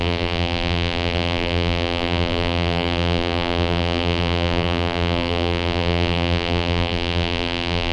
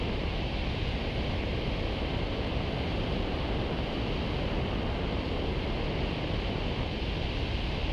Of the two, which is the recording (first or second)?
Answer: second